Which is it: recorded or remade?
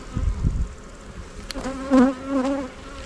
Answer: recorded